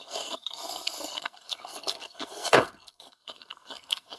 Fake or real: fake